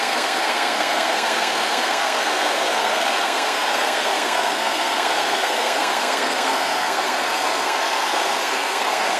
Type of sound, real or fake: fake